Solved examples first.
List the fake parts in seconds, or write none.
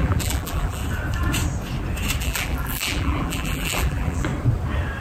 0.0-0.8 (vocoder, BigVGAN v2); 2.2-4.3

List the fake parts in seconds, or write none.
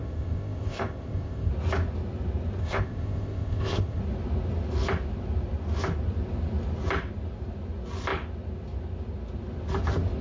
0.0-1.5 (codec, ZipCodec); 2.6-4.0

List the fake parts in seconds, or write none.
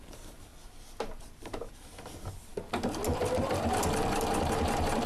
0.0-0.5 (vocoder, BigVGAN v2); 1.2-2.5; 3.3-5.1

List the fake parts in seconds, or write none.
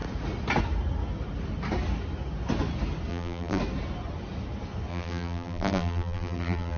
3.1-3.6 (vocoder, BigVGAN v2); 4.9-6.8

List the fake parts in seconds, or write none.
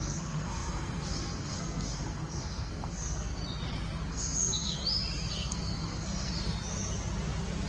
0.0-3.4 (codec, SNAC); 4.1-4.8; 5.3-6.3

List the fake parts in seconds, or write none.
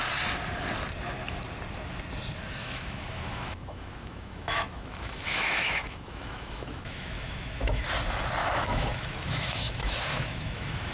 2.6-7.8 (autoencoder, DAC-VAE); 8.4-10.9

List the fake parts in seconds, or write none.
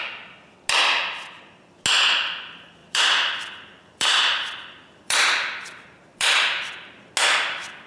2.8-7.1 (vocoder, BigVGAN v2)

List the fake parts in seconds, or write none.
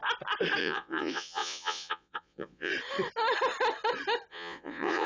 0.6-2.7 (vocoder, Vocos); 4.3-5.1